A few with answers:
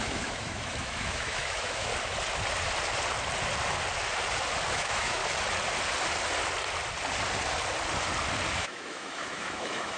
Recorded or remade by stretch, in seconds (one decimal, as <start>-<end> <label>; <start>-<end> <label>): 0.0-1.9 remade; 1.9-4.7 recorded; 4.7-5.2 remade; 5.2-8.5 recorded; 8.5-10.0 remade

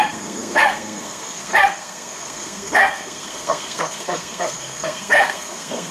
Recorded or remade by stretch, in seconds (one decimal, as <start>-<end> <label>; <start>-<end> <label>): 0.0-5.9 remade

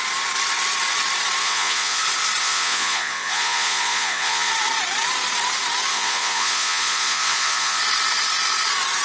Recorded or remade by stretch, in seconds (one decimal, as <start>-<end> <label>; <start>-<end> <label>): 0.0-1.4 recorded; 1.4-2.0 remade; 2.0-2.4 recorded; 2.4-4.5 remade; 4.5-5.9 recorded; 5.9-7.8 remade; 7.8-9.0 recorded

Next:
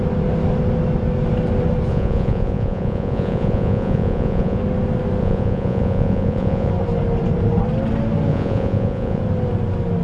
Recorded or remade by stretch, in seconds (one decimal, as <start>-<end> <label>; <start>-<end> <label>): 0.0-1.9 recorded; 1.9-4.6 remade; 4.6-5.2 recorded; 5.2-6.7 remade; 6.7-8.3 recorded; 8.3-9.2 remade; 9.2-10.0 recorded

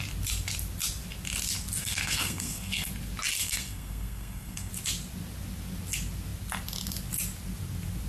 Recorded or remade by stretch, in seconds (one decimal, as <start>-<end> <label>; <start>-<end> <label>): 0.0-1.8 recorded; 1.8-2.9 remade; 2.9-3.4 recorded; 3.4-4.7 remade; 4.7-8.1 recorded

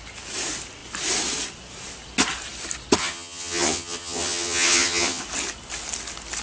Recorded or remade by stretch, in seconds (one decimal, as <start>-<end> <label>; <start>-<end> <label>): 0.0-3.0 recorded; 3.0-5.2 remade; 5.2-6.4 recorded

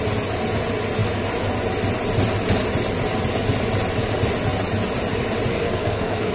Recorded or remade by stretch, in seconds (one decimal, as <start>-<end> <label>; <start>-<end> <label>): 0.0-5.5 recorded; 5.5-6.3 remade